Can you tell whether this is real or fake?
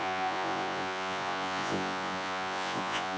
fake